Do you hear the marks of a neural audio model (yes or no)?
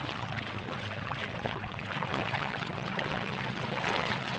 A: yes